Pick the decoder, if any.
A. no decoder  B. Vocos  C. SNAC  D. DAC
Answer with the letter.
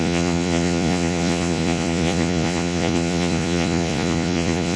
B